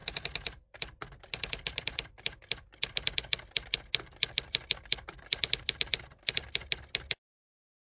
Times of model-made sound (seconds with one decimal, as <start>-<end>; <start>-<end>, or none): none